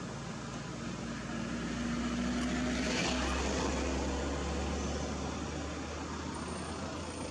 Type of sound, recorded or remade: recorded